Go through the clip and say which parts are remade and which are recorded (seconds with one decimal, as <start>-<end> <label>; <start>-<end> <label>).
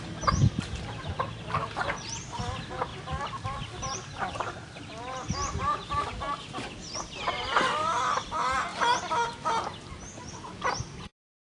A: 0.0-11.4 recorded